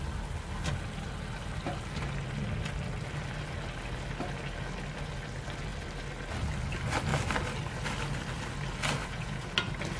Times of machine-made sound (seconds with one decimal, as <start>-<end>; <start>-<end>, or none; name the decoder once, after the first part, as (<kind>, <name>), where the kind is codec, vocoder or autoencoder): 9.0-9.5 (vocoder, Vocos)